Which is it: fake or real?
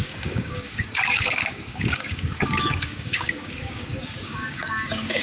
fake